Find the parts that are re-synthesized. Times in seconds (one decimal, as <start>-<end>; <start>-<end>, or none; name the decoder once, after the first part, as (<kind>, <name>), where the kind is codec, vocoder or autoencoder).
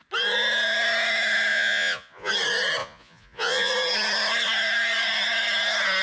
1.5-2.3 (vocoder, Vocos); 2.8-3.7